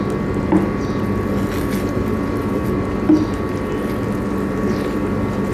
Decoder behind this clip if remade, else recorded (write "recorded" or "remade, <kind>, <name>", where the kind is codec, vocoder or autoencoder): recorded